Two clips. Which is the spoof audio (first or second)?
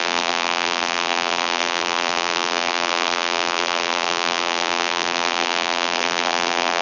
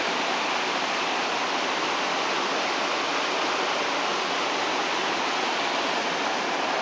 first